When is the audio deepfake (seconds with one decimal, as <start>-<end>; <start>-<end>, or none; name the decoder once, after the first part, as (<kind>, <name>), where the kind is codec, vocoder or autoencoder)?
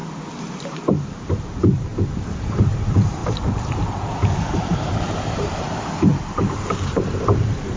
0.9-1.9 (vocoder, BigVGAN v2); 2.6-6.1; 6.6-7.8